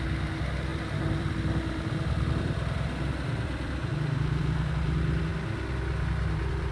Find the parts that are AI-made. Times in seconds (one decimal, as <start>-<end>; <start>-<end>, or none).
0.7-4.7